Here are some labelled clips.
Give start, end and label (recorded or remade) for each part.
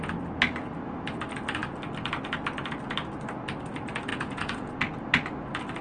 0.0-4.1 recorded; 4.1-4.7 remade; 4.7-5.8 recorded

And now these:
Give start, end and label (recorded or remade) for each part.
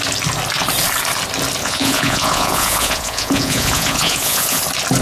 0.0-1.6 recorded; 1.6-4.6 remade; 4.6-5.0 recorded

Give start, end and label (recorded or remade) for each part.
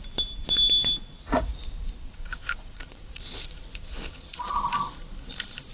0.0-1.0 recorded; 1.0-4.4 remade; 4.4-5.7 recorded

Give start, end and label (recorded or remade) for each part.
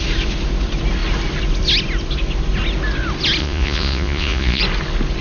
0.0-3.4 recorded; 3.4-4.6 remade; 4.6-5.2 recorded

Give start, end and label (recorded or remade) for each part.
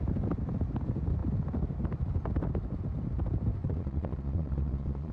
0.0-3.6 recorded; 3.6-5.1 remade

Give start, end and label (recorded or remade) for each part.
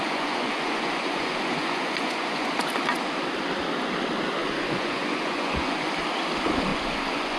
0.0-2.5 remade; 2.5-4.4 recorded; 4.4-5.9 remade; 5.9-6.7 recorded; 6.7-7.4 remade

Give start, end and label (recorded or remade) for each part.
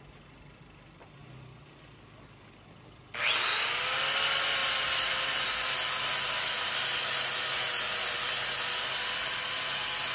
0.0-10.1 recorded